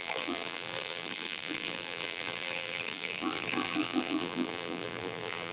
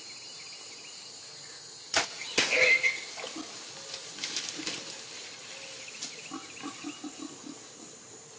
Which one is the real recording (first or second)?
second